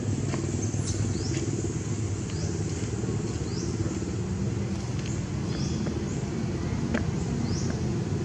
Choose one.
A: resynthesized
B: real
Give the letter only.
B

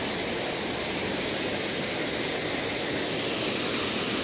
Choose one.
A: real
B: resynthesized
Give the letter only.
A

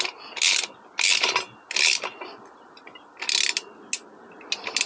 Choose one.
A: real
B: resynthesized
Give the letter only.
A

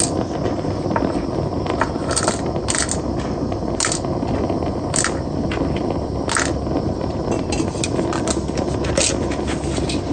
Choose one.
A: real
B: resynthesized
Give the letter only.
A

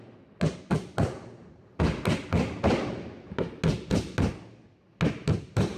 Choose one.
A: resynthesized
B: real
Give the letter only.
B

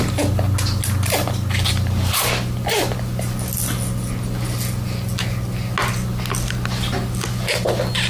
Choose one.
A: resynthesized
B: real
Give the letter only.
B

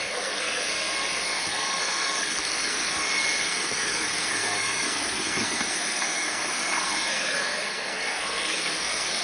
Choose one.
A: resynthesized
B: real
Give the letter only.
A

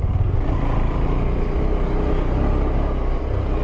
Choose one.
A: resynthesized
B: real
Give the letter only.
B